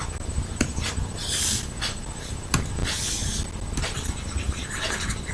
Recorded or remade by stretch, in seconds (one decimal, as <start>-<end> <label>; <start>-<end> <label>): 0.0-2.8 remade; 2.8-3.8 recorded; 3.8-5.3 remade